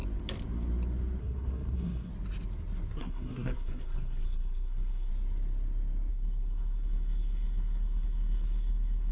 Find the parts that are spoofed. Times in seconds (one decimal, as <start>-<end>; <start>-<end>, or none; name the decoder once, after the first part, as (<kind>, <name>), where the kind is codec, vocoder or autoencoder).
1.2-2.1 (codec, SNAC); 3.0-5.1; 6.1-9.1